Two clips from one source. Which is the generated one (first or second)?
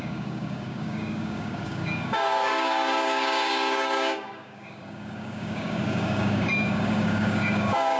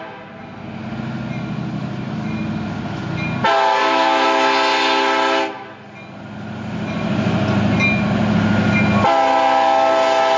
first